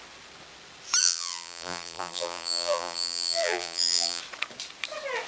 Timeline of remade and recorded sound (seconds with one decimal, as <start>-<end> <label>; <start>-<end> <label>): 0.0-1.0 recorded; 1.0-4.2 remade; 4.2-5.3 recorded